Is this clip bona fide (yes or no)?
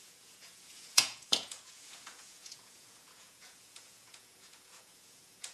no